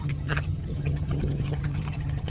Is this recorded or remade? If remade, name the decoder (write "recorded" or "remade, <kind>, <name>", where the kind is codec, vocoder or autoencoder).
remade, vocoder, HiFi-GAN